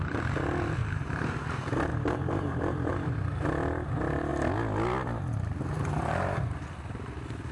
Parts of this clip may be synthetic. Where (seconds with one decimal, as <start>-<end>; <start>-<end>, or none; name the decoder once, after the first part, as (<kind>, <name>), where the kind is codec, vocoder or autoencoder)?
0.8-1.4 (vocoder, BigVGAN v2); 1.9-2.9